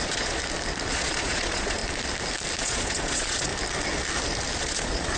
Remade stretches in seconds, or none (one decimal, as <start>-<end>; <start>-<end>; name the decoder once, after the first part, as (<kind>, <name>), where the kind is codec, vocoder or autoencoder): 0.0-0.4 (vocoder, Vocos); 0.9-1.8; 2.6-3.5; 4.6-5.2